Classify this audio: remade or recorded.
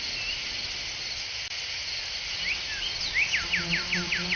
recorded